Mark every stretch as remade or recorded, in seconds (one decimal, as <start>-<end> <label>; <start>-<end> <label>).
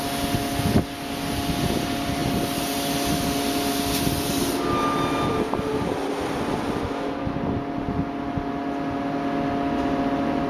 0.0-10.5 recorded